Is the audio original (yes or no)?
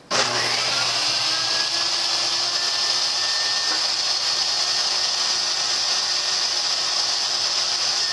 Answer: yes